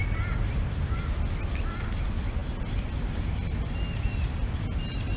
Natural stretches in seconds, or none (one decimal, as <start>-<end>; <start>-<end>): 0.0-5.2